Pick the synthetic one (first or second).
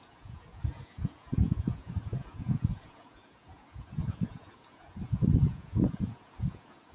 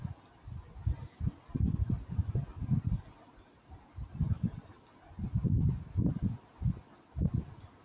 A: first